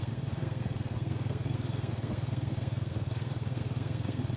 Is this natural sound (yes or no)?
no